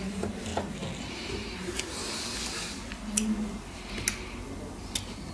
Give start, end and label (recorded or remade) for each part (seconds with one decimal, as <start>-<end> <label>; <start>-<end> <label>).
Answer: 0.0-0.5 remade; 0.5-1.1 recorded; 1.1-2.0 remade; 2.0-5.3 recorded